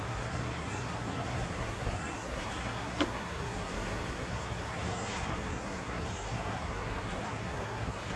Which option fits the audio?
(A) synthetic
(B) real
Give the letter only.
A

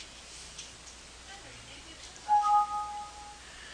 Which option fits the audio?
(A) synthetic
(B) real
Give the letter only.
B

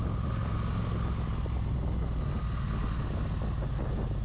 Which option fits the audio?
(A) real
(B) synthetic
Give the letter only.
A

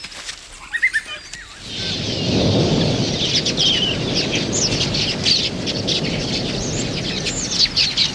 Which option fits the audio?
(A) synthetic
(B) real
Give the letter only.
B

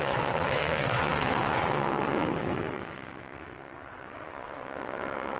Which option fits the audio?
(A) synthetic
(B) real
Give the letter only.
A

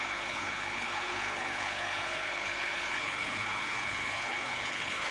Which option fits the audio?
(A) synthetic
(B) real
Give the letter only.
A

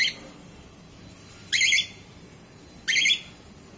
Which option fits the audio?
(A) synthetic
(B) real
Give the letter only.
B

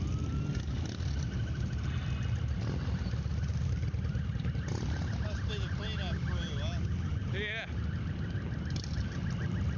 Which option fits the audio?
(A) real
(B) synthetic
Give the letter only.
A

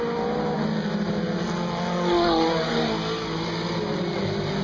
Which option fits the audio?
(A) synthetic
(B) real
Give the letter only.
B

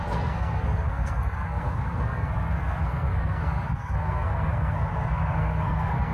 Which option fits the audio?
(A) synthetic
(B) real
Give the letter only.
A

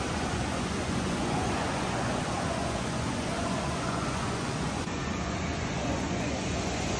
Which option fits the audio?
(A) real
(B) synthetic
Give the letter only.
B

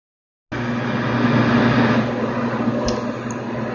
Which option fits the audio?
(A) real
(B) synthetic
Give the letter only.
A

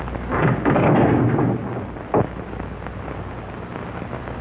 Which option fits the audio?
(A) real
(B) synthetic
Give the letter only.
A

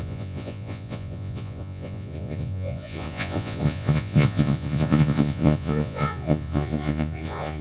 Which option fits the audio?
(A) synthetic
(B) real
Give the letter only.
A